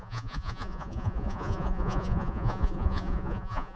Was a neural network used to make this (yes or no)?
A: yes